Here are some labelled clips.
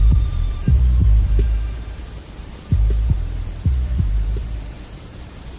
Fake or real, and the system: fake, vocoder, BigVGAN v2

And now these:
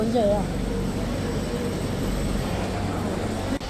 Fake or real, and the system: real